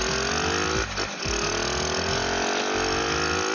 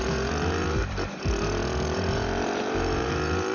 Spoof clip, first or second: second